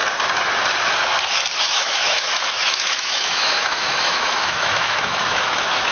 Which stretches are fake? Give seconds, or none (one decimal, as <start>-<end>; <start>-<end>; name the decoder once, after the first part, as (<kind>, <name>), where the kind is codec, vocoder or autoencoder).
1.6-5.9 (autoencoder, DAC-VAE)